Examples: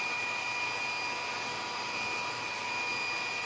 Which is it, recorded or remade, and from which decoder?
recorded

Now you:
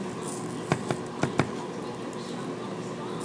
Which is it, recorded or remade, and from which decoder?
recorded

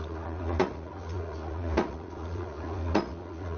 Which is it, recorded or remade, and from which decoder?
remade, vocoder, Vocos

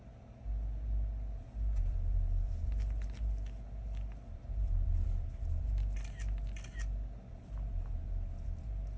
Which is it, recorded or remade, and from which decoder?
recorded